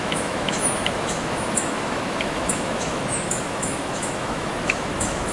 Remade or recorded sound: remade